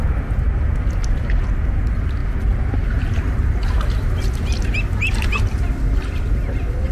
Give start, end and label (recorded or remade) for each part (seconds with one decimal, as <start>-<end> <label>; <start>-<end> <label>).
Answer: 0.0-6.9 recorded